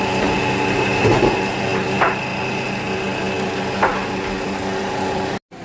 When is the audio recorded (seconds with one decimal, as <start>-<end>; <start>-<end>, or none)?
0.0-5.6